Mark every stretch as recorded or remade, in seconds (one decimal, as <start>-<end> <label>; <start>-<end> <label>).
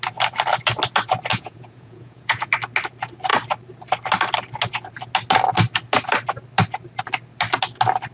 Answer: 0.0-1.3 recorded; 1.3-2.5 remade; 2.5-8.1 recorded